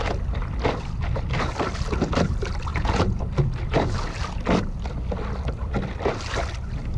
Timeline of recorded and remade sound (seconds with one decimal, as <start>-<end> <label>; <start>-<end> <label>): 0.0-2.7 recorded; 2.7-3.2 remade; 3.2-7.0 recorded